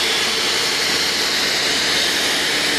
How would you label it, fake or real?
real